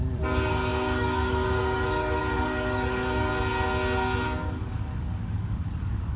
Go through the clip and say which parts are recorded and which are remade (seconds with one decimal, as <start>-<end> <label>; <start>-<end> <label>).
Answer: 0.0-3.3 remade; 3.3-4.5 recorded; 4.5-6.2 remade